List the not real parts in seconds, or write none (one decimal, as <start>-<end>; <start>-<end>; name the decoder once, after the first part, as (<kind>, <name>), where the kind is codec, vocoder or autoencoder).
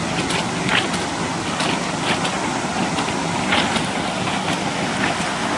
none